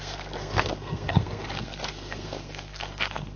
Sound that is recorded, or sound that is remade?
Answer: remade